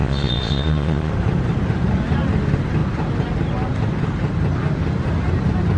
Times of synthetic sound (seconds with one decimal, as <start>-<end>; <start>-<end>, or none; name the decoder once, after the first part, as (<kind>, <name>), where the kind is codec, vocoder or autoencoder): 0.0-1.1 (vocoder, Vocos)